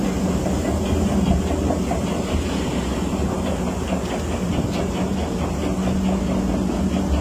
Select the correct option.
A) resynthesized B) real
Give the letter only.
B